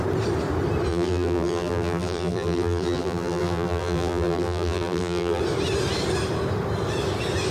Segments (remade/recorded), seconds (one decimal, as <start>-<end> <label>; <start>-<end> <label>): 0.0-0.9 recorded; 0.9-5.4 remade; 5.4-7.5 recorded